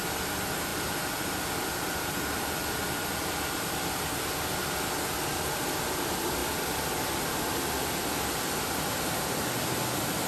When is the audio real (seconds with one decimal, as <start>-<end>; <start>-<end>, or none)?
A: 0.0-10.3